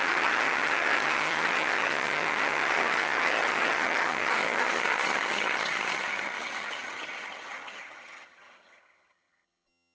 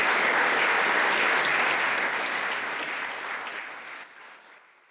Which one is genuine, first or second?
second